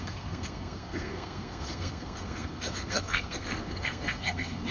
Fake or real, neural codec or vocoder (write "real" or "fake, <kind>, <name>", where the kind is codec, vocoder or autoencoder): fake, codec, SNAC